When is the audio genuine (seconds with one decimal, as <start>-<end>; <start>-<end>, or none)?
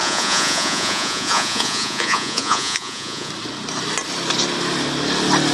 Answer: 3.3-5.5